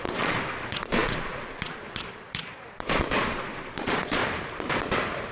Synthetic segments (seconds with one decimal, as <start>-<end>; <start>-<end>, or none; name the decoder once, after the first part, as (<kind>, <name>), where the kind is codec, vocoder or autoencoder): 0.0-4.2 (vocoder, Vocos)